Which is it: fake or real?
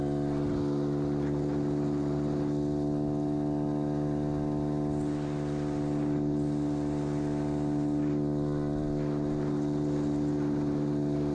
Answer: real